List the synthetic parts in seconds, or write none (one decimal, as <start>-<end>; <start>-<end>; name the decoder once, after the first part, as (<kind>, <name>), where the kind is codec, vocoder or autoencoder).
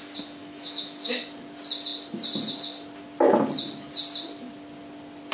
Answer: 0.4-1.2 (autoencoder, DAC-VAE)